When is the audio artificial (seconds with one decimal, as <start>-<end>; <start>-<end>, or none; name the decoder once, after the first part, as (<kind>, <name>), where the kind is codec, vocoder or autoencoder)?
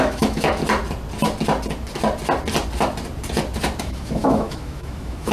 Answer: 0.0-0.6 (autoencoder, DAC-VAE); 3.8-5.3